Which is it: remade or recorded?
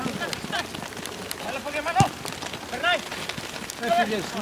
recorded